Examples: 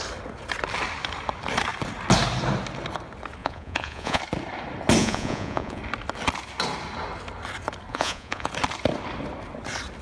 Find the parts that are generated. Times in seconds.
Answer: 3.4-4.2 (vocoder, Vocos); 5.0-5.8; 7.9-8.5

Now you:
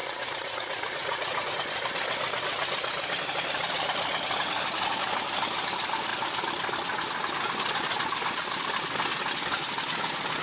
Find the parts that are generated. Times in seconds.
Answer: 0.0-1.5 (vocoder, Vocos)

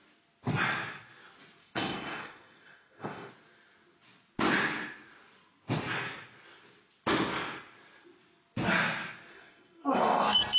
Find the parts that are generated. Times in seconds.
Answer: 1.6-3.3 (codec, SNAC); 9.3-10.6

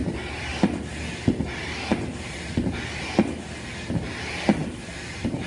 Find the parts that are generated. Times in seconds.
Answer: 0.0-1.5 (vocoder, BigVGAN v2); 1.9-3.3; 4.6-5.5